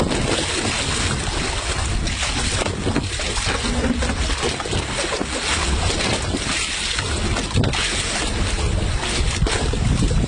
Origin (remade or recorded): recorded